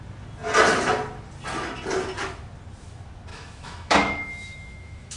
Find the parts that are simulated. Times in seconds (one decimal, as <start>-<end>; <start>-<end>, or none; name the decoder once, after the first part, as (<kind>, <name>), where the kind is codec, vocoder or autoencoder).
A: 3.3-5.2 (autoencoder, DAC-VAE)